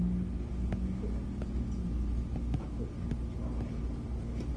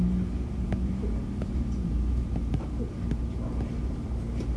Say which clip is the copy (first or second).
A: second